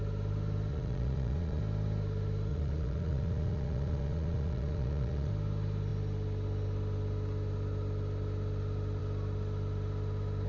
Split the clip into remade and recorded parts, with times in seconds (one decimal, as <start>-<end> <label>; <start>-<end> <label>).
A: 0.0-0.7 recorded; 0.7-1.6 remade; 1.6-2.5 recorded; 2.5-5.3 remade; 5.3-10.5 recorded